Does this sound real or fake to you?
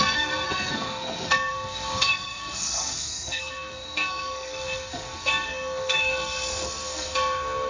fake